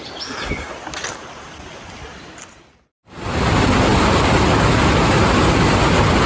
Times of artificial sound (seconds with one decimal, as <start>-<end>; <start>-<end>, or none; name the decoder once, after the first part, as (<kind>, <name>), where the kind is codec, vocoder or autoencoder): none